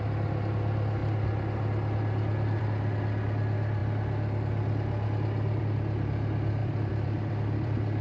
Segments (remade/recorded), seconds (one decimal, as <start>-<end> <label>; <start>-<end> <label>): 0.0-6.6 recorded; 6.6-8.0 remade